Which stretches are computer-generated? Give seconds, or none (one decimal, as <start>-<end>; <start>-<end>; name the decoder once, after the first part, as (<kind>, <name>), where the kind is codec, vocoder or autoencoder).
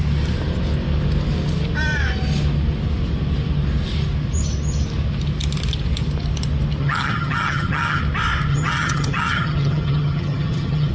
6.8-8.0 (vocoder, HiFi-GAN); 8.5-10.9